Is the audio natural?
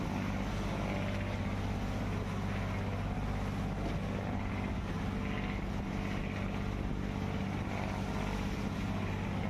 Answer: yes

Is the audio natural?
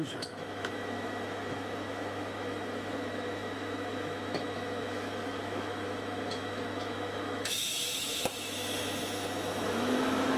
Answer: no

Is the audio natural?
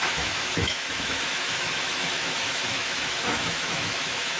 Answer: no